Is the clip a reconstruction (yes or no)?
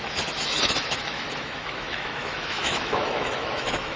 yes